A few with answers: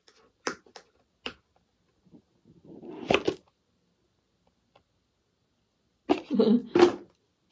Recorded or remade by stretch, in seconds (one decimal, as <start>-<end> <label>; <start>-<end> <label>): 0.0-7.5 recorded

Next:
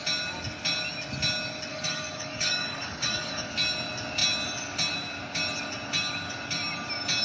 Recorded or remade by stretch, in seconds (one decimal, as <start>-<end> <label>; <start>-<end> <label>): 0.0-1.7 recorded; 1.7-3.5 remade; 3.5-7.2 recorded

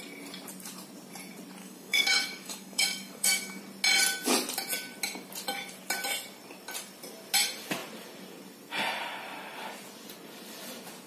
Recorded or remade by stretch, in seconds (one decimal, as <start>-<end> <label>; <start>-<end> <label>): 0.0-1.6 recorded; 1.6-3.6 remade; 3.6-11.1 recorded